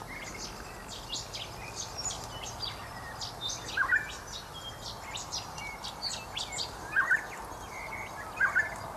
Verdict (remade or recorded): recorded